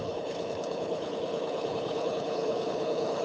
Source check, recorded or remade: remade